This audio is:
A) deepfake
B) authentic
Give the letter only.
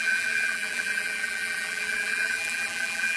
A